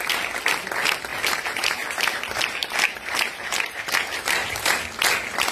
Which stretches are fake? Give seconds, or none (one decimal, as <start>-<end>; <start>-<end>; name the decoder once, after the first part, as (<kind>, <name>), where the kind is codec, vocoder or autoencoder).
1.1-2.0 (vocoder, BigVGAN v2); 2.6-4.8